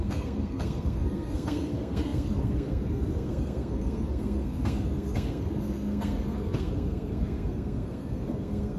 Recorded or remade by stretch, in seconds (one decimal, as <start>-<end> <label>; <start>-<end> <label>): 0.0-8.8 remade